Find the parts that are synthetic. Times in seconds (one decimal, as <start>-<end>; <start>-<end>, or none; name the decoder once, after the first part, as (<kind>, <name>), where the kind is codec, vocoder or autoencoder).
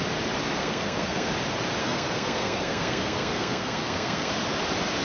0.6-1.3 (codec, SNAC); 1.8-4.3